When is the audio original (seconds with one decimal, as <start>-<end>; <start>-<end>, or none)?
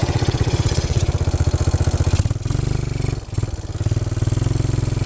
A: 1.1-5.1